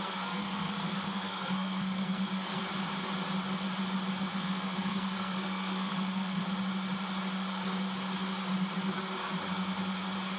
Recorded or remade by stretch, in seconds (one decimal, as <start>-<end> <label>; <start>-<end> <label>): 0.0-2.6 remade; 2.6-4.3 recorded; 4.3-6.4 remade; 6.4-10.4 recorded